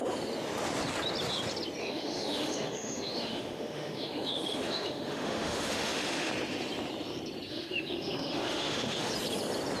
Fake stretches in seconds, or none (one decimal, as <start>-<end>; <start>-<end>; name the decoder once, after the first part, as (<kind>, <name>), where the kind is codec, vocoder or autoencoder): 1.8-6.3 (autoencoder, DAC-VAE); 7.5-9.1